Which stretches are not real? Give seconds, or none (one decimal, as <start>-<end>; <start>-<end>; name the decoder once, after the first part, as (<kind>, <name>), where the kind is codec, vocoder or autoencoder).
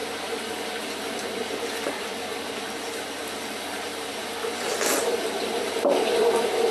0.8-6.7 (vocoder, BigVGAN v2)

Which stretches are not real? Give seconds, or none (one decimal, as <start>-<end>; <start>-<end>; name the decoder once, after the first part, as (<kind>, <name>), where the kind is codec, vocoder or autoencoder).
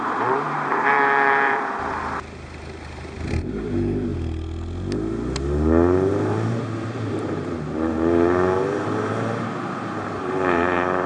0.0-4.1 (vocoder, BigVGAN v2); 6.1-11.1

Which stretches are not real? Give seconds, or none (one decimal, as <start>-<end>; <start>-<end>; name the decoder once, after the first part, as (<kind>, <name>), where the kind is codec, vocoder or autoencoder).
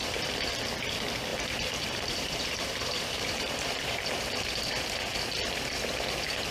1.3-5.2 (vocoder, BigVGAN v2)